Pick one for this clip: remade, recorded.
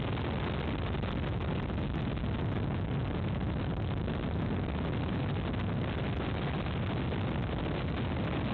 recorded